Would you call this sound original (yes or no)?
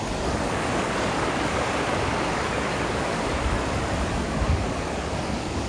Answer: no